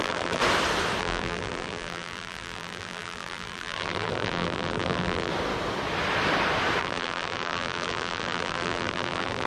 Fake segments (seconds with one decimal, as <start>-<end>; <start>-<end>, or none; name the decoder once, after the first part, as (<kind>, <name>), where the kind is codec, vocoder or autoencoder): 0.0-0.4 (vocoder, BigVGAN v2); 1.0-5.3; 6.8-9.5